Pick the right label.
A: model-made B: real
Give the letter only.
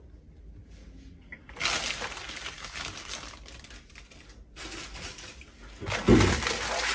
B